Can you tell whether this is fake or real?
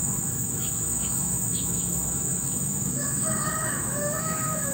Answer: fake